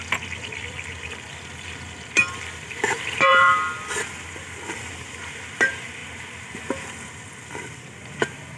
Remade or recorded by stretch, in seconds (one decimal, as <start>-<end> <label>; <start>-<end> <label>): 0.0-6.0 remade; 6.0-8.6 recorded